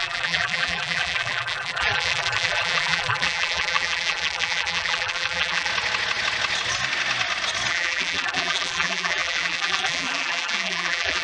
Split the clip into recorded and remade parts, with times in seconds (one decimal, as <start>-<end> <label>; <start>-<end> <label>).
0.0-5.7 remade; 5.7-7.7 recorded; 7.7-11.2 remade